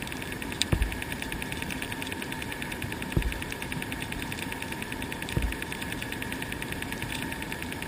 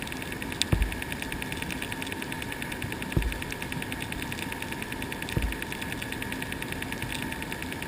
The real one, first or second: second